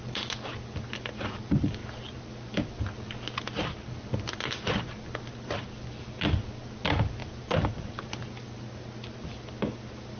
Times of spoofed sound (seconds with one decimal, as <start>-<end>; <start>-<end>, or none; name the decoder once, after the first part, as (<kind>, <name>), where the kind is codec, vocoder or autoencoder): 1.8-2.3 (vocoder, BigVGAN v2)